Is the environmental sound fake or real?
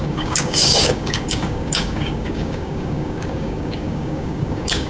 fake